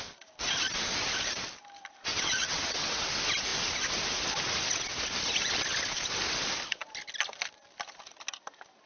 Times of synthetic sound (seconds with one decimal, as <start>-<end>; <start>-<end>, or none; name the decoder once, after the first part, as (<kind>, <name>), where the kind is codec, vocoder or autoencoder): 2.1-3.1 (vocoder, WaveNeXt)